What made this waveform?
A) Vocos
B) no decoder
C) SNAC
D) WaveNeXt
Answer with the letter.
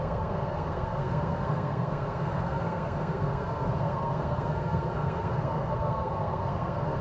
C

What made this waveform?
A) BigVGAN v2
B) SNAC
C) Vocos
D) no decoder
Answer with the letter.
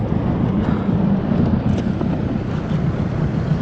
D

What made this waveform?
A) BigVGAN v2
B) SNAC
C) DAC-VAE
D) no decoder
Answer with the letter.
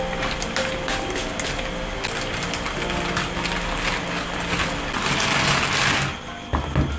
D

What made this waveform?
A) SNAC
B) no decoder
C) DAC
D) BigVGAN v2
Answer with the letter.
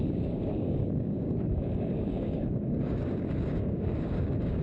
C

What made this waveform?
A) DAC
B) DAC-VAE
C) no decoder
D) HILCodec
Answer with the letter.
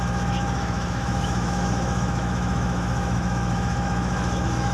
B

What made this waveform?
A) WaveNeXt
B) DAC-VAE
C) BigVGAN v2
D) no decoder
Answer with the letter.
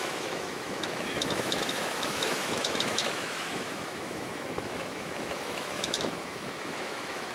B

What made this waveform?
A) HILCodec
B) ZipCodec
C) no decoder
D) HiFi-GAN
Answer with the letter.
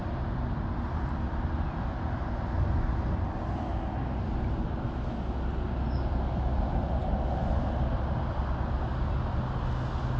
C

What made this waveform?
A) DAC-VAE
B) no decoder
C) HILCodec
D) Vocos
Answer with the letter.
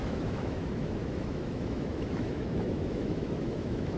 A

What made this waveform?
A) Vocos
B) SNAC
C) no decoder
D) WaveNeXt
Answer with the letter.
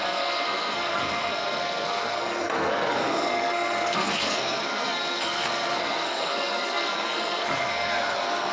B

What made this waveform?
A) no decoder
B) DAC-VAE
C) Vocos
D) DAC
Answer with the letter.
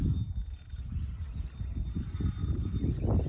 A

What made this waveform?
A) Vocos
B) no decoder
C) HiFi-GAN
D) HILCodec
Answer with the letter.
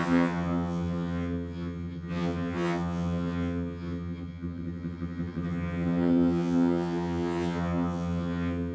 C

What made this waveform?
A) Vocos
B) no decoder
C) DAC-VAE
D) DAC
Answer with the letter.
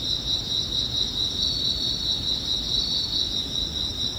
B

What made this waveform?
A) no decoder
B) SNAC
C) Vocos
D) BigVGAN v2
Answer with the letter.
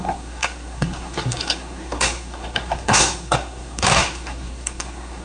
B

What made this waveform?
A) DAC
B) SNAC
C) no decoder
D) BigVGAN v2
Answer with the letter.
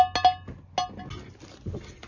C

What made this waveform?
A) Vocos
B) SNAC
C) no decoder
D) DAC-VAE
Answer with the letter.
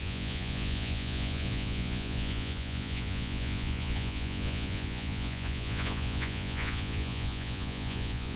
A